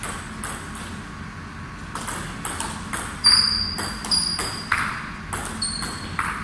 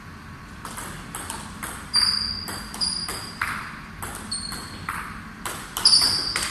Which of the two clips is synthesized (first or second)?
second